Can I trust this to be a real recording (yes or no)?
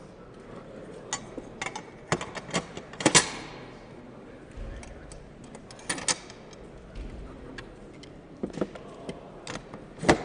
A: yes